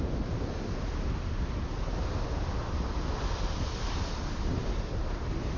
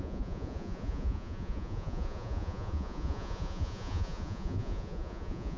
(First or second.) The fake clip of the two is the second